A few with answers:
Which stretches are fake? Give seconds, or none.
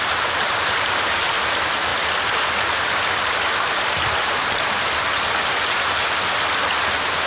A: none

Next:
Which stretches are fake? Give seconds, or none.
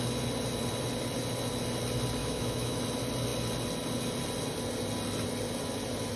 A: 2.2-2.8 (autoencoder, DAC-VAE)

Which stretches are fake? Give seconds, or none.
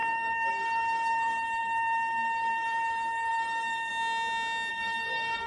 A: 0.0-3.9 (codec, SNAC); 4.7-5.5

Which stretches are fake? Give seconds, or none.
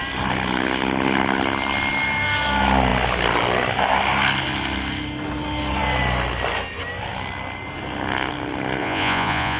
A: 8.8-9.6 (vocoder, Vocos)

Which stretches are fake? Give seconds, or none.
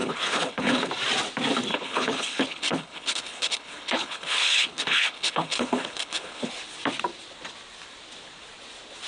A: 0.0-0.9 (codec, HILCodec); 1.7-6.5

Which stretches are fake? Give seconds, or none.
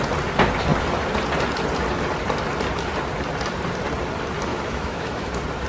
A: 4.5-5.3 (autoencoder, DAC-VAE)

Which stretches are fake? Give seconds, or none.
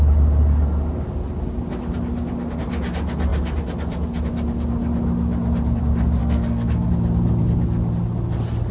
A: 6.2-6.9 (codec, SNAC)